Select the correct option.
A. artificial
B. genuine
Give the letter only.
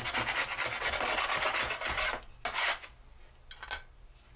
B